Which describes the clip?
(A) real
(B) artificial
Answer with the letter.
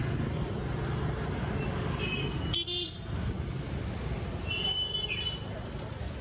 A